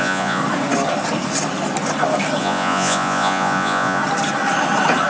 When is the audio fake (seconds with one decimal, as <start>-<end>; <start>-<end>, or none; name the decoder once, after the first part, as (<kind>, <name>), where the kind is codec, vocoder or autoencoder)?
0.0-0.4 (vocoder, Vocos); 2.4-4.0